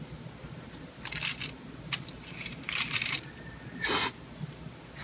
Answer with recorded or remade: recorded